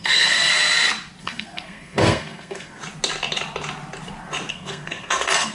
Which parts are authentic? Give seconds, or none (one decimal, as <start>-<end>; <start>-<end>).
0.5-1.2; 2.8-4.5